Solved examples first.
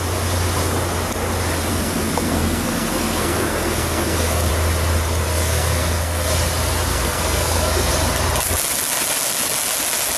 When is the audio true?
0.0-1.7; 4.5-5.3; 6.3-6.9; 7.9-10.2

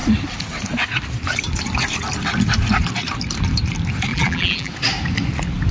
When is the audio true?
0.0-4.1; 4.7-5.7